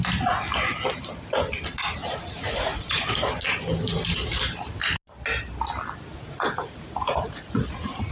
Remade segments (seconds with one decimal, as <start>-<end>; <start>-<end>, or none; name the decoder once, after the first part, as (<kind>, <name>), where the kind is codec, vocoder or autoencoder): 2.0-3.1 (vocoder, Vocos); 6.1-8.1

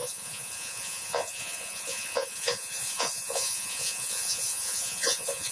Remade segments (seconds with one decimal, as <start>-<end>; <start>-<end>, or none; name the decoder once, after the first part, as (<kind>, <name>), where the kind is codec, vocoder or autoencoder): 0.0-5.5 (vocoder, Vocos)

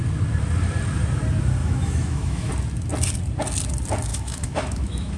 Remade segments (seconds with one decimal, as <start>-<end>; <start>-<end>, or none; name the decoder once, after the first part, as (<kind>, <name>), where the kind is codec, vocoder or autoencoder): 1.6-2.5 (autoencoder, DAC-VAE); 4.1-5.2

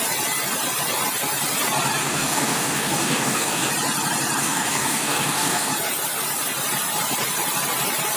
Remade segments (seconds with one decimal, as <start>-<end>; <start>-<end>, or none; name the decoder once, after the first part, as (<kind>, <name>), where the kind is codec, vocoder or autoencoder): 2.0-3.7 (codec, DAC); 4.4-5.7

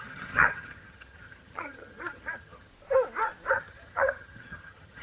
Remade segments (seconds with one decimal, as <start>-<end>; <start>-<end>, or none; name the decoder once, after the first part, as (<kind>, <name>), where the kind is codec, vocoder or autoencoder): 0.0-2.7 (vocoder, HiFi-GAN); 3.5-5.0

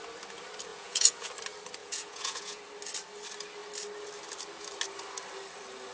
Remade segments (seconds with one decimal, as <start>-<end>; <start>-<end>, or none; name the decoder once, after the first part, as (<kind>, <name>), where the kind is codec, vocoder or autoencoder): 0.7-1.3 (vocoder, Vocos); 1.8-2.6

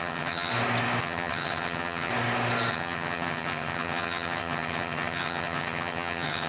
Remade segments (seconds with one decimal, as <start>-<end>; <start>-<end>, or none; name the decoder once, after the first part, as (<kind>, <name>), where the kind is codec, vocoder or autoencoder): 0.0-0.5 (vocoder, HiFi-GAN); 1.0-2.1; 2.7-6.5